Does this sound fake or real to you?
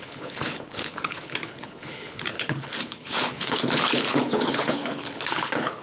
fake